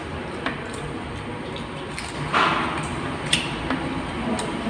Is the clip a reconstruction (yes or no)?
no